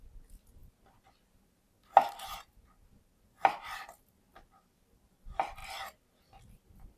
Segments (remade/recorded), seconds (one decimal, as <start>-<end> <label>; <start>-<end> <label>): 0.0-7.0 recorded